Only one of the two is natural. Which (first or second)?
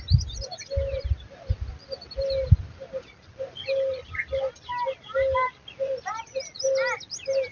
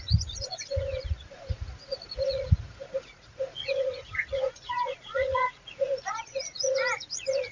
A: first